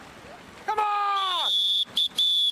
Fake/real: real